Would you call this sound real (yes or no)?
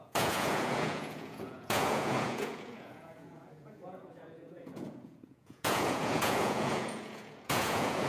no